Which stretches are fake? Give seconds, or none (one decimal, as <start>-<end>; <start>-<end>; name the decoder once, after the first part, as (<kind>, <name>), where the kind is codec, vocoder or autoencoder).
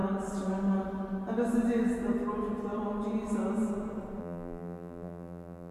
4.2-5.7 (vocoder, BigVGAN v2)